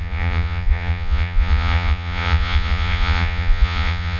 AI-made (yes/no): yes